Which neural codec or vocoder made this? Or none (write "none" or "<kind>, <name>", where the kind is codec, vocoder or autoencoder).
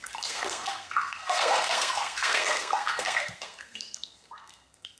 codec, SNAC